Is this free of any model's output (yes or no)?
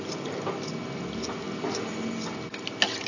yes